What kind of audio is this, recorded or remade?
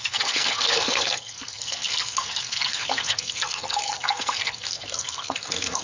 remade